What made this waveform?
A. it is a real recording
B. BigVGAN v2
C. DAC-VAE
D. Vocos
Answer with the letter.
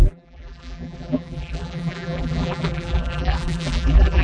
B